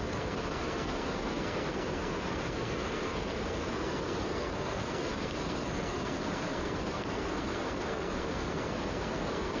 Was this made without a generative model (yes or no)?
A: no